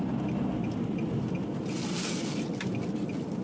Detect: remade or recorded recorded